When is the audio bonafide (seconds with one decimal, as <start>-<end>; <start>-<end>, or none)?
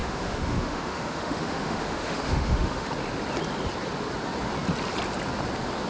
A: 2.9-5.9